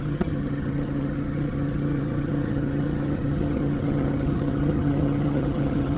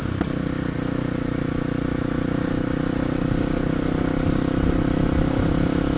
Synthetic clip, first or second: first